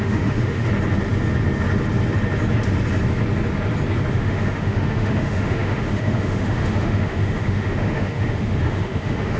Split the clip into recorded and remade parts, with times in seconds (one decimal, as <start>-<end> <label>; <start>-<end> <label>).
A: 0.0-0.6 remade; 0.6-4.1 recorded; 4.1-9.4 remade